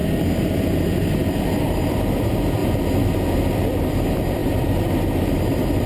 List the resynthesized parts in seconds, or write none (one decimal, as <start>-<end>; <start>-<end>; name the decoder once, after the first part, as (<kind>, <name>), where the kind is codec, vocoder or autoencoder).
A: 1.4-2.6 (vocoder, BigVGAN v2); 3.5-5.9